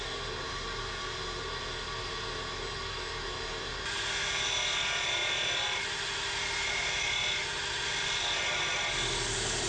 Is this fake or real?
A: real